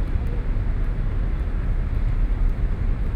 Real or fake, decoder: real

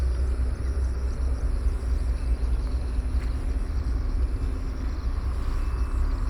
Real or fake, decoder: real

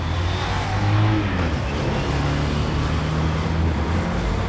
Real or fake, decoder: real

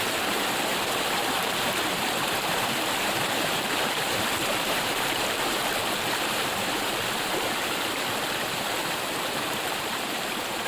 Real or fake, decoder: fake, vocoder, BigVGAN v2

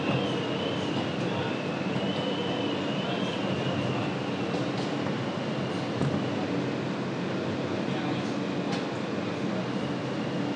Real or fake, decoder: real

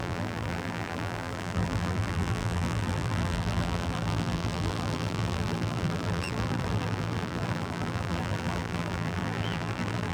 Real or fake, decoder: fake, vocoder, BigVGAN v2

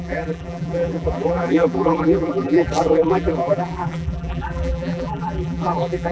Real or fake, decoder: fake, vocoder, BigVGAN v2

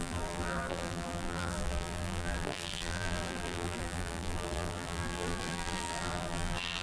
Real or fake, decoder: fake, vocoder, BigVGAN v2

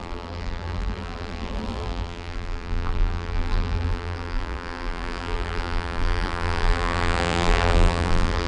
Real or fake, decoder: fake, vocoder, BigVGAN v2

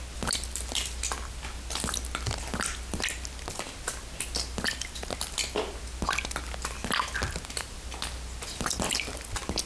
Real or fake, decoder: real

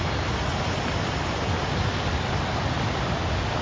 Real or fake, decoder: real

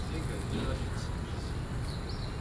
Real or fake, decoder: real